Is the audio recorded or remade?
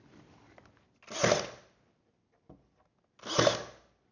recorded